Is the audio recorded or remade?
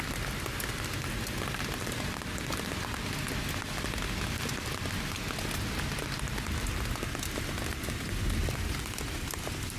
recorded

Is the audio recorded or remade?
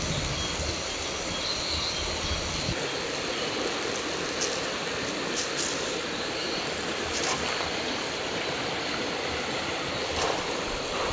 recorded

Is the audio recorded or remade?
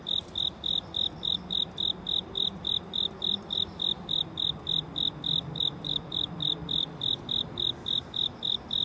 remade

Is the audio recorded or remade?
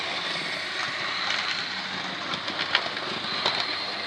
remade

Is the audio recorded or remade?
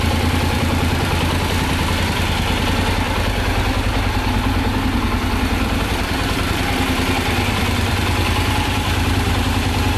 remade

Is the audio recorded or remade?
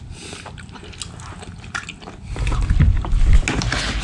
recorded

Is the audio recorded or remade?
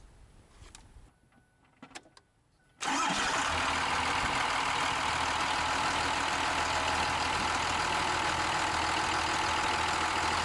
recorded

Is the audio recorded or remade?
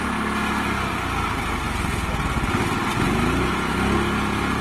recorded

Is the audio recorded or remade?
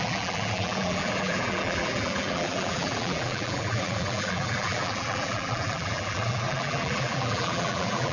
remade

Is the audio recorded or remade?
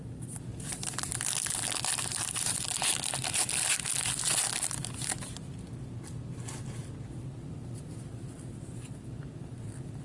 recorded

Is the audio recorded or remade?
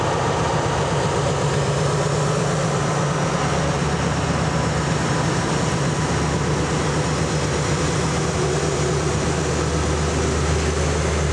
recorded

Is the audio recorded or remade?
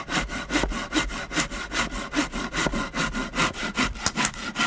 recorded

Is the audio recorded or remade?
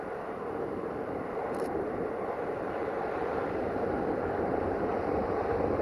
remade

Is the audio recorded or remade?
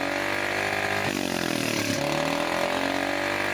recorded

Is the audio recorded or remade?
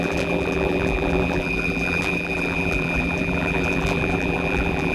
remade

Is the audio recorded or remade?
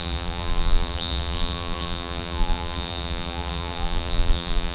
remade